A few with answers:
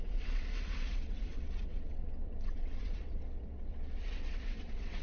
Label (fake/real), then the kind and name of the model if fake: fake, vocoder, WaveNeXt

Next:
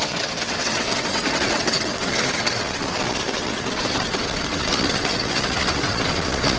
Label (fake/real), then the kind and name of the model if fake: fake, vocoder, WaveNeXt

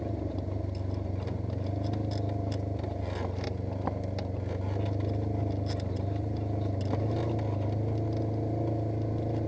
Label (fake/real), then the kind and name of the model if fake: real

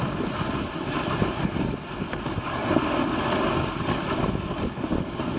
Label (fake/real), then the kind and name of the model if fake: real